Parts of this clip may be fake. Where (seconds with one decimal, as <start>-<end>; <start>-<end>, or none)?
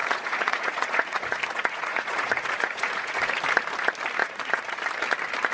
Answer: 0.0-3.3; 4.2-4.8